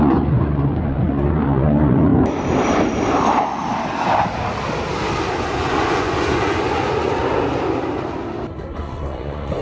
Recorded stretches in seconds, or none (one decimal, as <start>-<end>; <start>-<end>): 2.1-5.4; 7.2-8.6